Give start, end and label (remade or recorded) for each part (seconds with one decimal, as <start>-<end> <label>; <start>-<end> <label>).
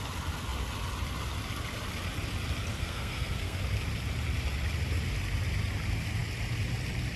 0.0-2.8 recorded; 2.8-3.6 remade; 3.6-7.2 recorded